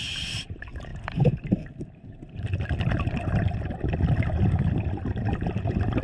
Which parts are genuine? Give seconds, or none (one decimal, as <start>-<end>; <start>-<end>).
0.0-6.0